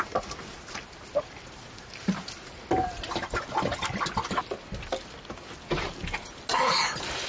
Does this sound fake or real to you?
real